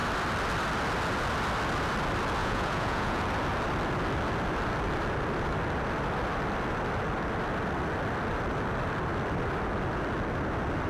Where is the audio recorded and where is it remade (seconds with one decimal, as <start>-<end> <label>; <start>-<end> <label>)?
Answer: 0.0-2.4 recorded; 2.4-3.2 remade; 3.2-10.9 recorded